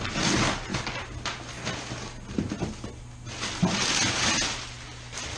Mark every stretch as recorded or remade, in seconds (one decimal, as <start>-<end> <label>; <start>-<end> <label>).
0.0-5.4 recorded